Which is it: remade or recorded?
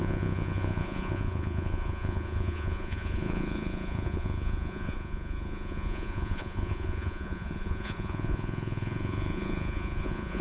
remade